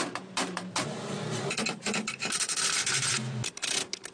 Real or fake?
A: fake